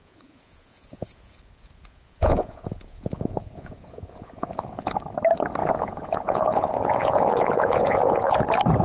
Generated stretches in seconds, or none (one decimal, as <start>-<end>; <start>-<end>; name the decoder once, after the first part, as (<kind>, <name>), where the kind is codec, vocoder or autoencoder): 0.0-5.0 (vocoder, Vocos); 5.6-8.4